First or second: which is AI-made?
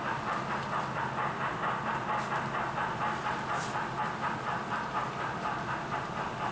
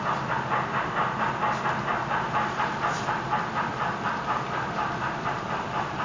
second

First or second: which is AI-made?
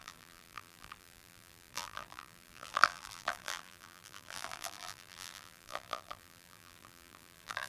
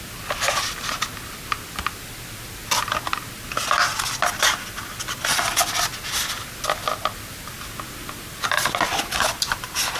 first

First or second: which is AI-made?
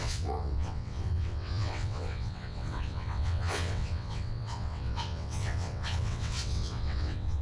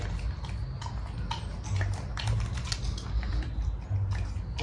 first